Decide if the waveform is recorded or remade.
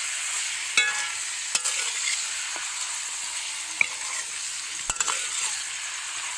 recorded